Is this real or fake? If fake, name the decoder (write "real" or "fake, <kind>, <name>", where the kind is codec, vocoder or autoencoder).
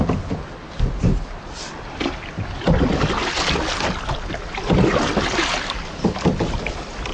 real